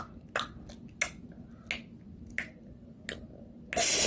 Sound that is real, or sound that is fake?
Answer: real